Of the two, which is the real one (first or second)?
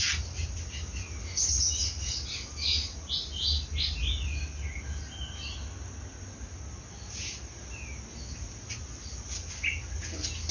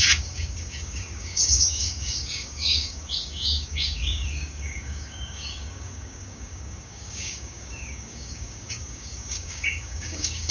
first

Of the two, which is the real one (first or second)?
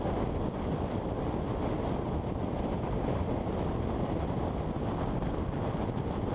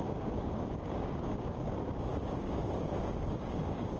first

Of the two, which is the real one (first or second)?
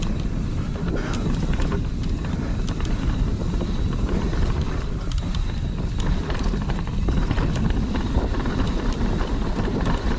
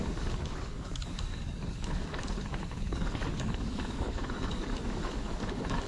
first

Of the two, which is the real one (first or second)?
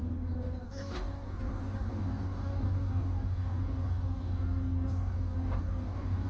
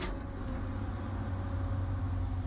second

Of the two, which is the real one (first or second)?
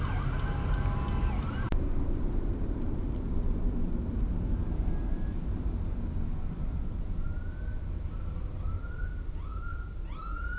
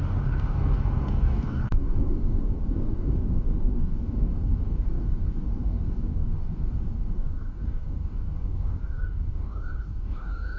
first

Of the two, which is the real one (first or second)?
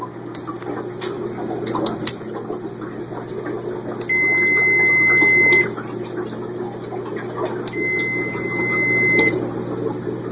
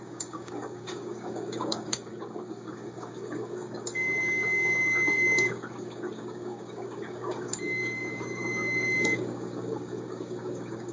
first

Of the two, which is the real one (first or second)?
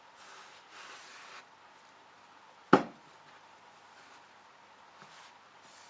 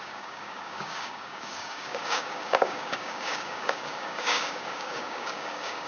first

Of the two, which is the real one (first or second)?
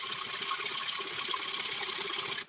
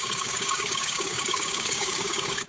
first